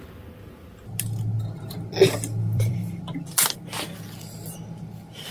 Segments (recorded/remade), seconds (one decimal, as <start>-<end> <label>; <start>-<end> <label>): 0.0-2.4 recorded; 2.4-3.0 remade; 3.0-5.3 recorded